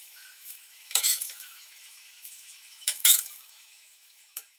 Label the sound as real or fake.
fake